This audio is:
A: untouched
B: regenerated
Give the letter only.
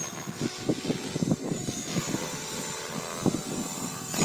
A